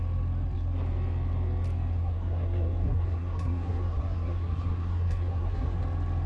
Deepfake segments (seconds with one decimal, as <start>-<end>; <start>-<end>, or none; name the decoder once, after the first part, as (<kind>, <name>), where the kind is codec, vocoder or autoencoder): 2.0-5.8 (codec, SNAC)